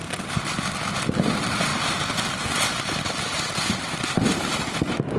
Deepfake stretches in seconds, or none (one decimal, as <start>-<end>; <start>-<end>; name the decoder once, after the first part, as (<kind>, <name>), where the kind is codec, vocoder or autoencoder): none